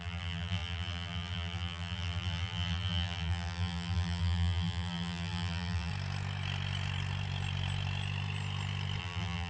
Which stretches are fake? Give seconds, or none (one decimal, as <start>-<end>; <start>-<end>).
0.0-5.9; 9.0-9.5